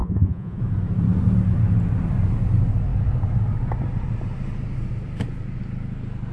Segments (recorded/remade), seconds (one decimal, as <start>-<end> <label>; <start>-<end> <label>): 0.0-0.6 remade; 0.6-6.3 recorded